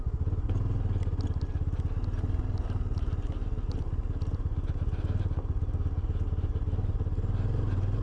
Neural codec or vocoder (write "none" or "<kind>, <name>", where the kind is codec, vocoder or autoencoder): none